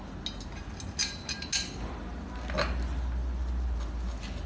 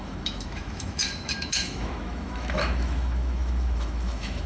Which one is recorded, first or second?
first